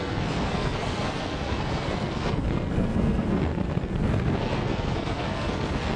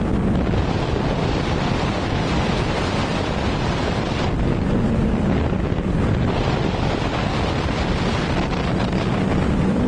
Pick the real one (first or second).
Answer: second